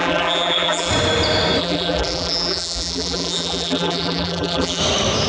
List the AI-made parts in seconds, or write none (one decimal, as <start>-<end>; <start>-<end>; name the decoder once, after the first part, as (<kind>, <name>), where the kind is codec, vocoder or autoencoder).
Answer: 0.0-0.9 (vocoder, BigVGAN v2); 1.6-4.8